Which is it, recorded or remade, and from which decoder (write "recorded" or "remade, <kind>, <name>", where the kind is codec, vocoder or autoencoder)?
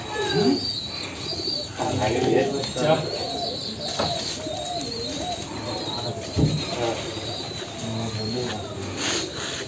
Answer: recorded